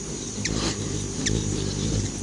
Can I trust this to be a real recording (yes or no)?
no